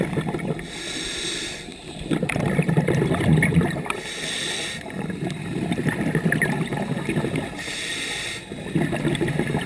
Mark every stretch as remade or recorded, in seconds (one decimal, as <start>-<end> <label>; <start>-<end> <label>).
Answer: 0.0-1.7 recorded; 1.7-6.1 remade; 6.1-9.7 recorded